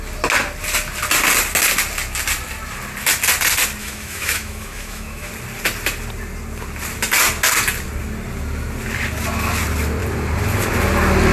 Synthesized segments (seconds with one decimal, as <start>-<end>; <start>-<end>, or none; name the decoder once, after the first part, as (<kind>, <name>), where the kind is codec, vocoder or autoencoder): 3.8-5.3 (autoencoder, DAC-VAE)